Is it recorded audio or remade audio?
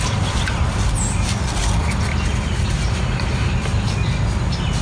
recorded